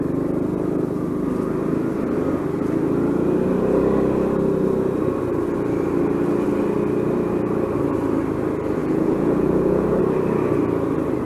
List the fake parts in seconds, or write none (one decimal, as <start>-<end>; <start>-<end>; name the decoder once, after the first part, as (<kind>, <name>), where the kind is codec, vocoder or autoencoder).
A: 8.8-10.0 (vocoder, Vocos)